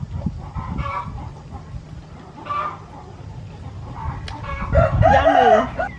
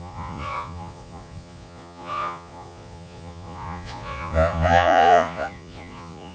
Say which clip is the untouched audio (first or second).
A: first